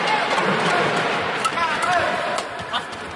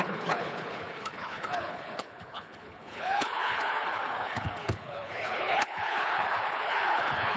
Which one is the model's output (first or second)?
second